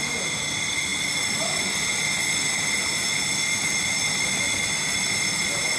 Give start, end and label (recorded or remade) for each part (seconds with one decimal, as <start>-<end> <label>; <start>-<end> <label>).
0.0-5.8 recorded